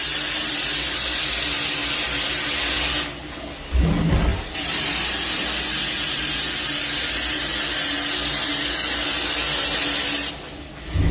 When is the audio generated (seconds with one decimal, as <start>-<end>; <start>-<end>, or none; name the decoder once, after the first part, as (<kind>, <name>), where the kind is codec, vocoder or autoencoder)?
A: none